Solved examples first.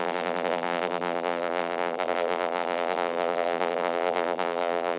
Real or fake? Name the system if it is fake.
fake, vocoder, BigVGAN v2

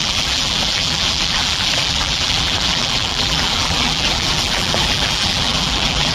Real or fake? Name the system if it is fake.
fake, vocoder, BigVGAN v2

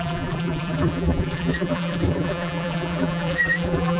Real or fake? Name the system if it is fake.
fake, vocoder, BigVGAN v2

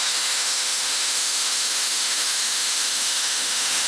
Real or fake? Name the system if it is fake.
fake, autoencoder, DAC-VAE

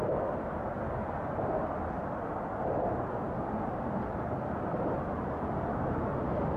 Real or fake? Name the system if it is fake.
real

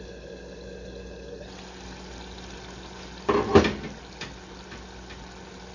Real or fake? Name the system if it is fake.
real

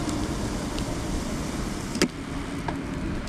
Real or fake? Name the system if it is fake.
real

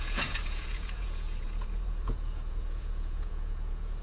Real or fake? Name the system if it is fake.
fake, vocoder, Vocos